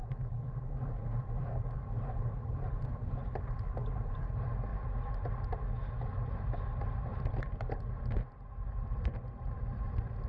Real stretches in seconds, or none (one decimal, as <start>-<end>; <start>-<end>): 0.0-0.9; 4.7-6.4